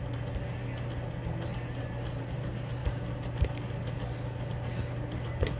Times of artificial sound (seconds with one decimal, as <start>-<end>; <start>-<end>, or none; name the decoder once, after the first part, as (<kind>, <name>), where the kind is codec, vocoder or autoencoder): none